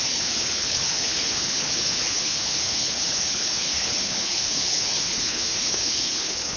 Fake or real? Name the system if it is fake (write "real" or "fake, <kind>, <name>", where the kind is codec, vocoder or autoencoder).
fake, codec, HILCodec